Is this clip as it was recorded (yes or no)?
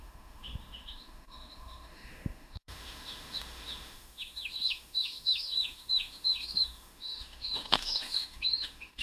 no